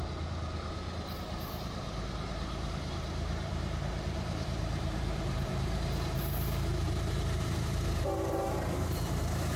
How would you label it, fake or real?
fake